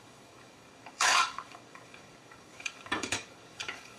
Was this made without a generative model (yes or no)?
no